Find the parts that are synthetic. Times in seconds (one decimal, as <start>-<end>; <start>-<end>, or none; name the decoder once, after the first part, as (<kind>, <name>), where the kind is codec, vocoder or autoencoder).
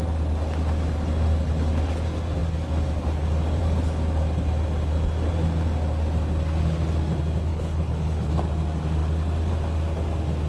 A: 7.5-8.3 (codec, HILCodec)